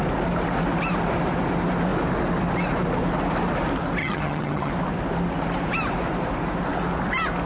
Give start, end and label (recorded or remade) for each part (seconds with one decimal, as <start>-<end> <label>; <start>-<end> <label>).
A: 0.0-4.0 recorded; 4.0-4.7 remade; 4.7-7.5 recorded